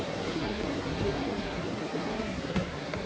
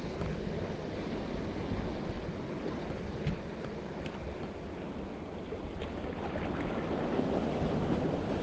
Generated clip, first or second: first